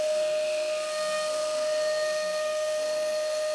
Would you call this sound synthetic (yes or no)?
yes